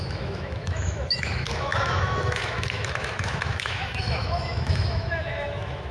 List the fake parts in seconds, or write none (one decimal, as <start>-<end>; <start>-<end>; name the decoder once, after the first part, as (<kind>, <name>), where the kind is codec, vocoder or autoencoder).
0.0-5.9 (autoencoder, DAC-VAE)